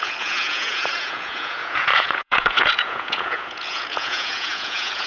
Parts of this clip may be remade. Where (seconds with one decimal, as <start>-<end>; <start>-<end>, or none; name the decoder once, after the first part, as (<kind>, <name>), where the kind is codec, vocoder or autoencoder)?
0.0-5.1 (vocoder, Vocos)